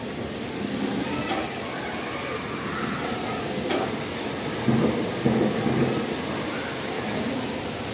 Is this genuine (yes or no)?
yes